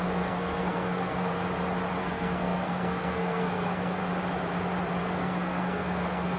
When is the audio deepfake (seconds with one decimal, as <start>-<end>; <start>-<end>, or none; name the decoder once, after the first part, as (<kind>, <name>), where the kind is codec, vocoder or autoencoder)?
0.0-1.3 (codec, SNAC); 2.0-4.0; 5.0-6.4